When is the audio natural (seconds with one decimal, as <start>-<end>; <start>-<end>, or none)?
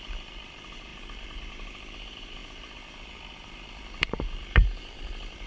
none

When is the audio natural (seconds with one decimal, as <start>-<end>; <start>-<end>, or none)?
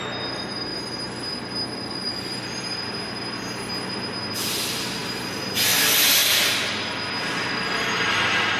0.0-0.7; 3.4-5.0; 5.5-6.2; 7.1-8.6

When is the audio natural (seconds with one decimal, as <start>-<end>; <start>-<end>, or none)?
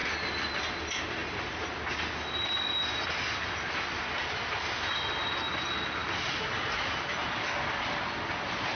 0.0-6.0; 6.8-8.7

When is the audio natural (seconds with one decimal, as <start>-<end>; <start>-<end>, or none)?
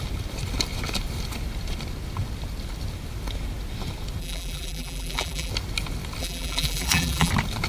0.0-4.2; 5.5-6.2; 7.3-7.7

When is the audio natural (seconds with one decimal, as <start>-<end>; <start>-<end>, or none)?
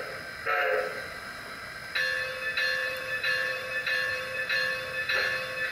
0.0-2.8; 4.7-5.7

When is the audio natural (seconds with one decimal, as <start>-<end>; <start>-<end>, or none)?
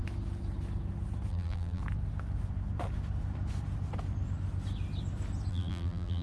0.0-1.3; 1.8-5.5